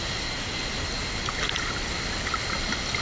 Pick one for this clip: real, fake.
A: real